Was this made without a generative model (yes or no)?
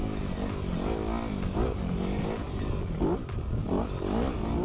yes